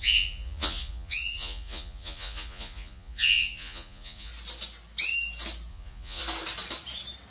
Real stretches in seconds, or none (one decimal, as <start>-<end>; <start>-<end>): 4.3-5.7; 6.2-7.3